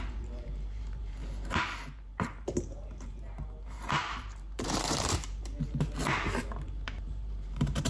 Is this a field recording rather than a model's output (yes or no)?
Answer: no